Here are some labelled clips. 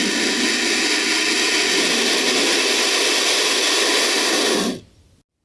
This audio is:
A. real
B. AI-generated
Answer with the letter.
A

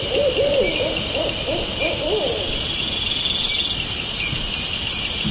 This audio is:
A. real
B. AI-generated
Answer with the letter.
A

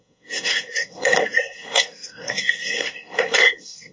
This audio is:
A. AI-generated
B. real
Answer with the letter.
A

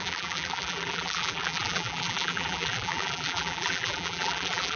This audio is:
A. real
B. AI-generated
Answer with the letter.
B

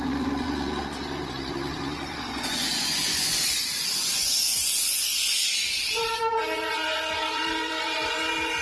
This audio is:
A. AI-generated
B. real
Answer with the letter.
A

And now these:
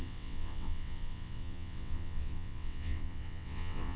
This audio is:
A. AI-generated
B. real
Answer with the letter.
A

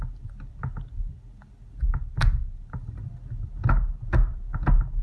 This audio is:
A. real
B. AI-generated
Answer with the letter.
A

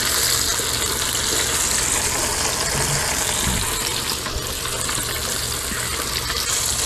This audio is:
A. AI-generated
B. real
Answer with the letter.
B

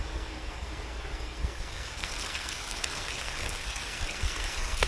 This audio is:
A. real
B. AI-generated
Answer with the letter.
B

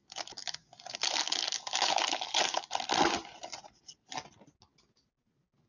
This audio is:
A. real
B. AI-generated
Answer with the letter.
A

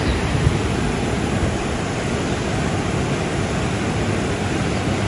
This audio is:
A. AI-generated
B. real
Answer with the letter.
A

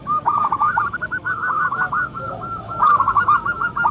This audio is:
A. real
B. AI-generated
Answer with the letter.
B